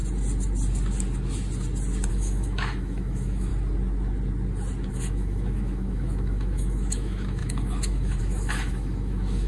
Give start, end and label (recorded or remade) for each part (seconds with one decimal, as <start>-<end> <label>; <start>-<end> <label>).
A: 0.0-2.1 recorded; 2.1-3.5 remade; 3.5-4.9 recorded; 4.9-9.5 remade